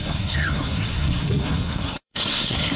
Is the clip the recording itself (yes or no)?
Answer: no